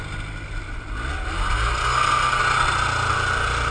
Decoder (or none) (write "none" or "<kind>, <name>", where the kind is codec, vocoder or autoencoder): none